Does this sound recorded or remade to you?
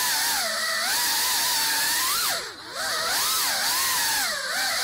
recorded